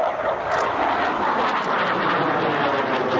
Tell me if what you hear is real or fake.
real